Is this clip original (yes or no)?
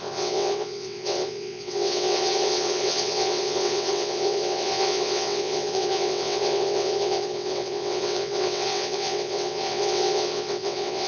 no